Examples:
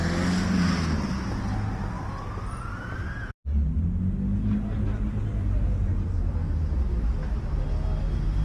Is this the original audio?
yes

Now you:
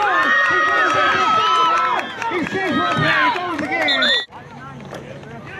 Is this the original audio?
yes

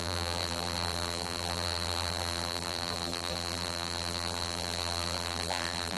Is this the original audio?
no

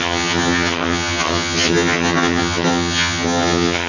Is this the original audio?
no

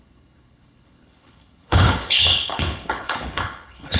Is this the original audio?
no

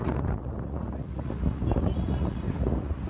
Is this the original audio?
no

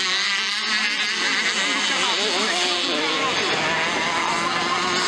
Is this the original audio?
yes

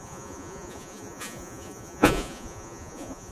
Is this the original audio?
no